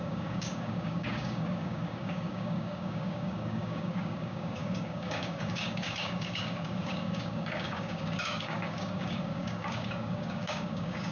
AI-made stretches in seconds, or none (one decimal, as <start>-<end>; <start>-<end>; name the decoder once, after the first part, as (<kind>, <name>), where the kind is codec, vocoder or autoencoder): 0.0-11.1 (codec, DAC)